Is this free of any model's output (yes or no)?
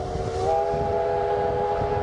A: yes